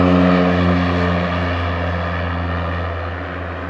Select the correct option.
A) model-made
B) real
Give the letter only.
B